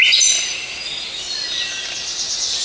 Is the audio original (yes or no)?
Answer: yes